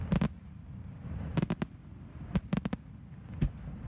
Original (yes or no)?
yes